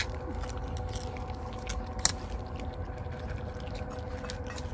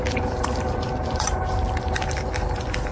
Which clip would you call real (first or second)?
first